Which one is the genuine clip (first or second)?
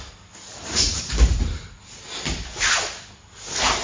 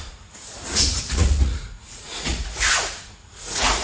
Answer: first